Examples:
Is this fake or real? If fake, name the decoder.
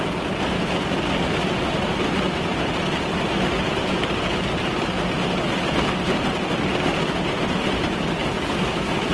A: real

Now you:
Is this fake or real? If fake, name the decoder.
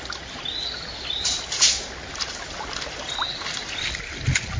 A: real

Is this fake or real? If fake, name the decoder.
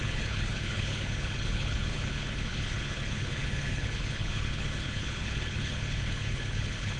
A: fake, codec, HILCodec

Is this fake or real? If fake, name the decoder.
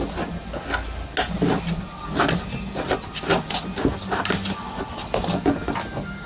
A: real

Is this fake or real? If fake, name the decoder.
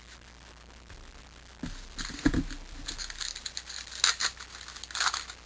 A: real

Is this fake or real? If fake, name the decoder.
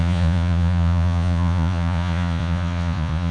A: fake, vocoder, Vocos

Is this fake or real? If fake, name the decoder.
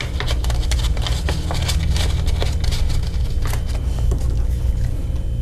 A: real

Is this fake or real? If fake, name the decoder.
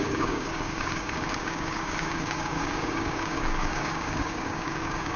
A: fake, codec, DAC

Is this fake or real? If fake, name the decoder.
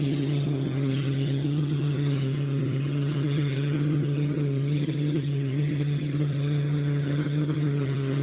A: fake, vocoder, HiFi-GAN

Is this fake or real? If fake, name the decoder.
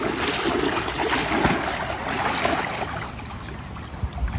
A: real